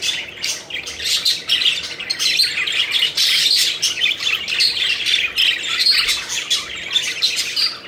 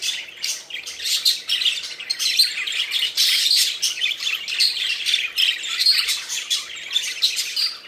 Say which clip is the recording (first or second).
first